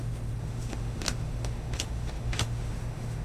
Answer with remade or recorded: remade